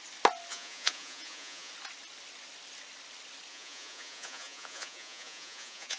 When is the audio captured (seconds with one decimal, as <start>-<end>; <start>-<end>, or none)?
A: 0.0-0.5; 1.7-3.5